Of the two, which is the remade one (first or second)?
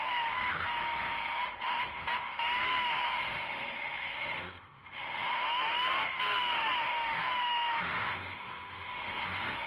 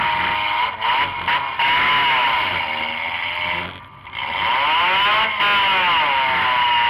first